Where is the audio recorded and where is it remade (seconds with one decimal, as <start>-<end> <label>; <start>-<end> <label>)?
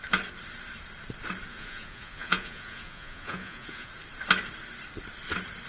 0.0-1.5 recorded; 1.5-3.9 remade; 3.9-5.7 recorded